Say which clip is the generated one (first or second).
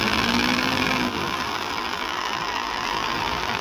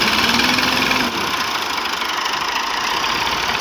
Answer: first